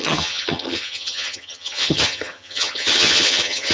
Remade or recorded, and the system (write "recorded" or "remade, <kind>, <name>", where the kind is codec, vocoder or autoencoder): remade, vocoder, HiFi-GAN